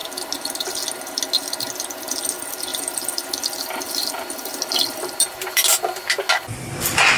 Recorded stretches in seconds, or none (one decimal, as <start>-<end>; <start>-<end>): 0.0-2.7; 6.3-7.2